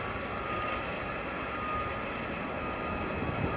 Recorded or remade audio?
recorded